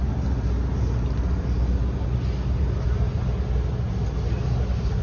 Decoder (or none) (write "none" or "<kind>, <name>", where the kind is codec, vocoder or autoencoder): none